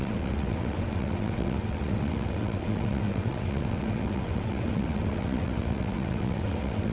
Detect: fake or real fake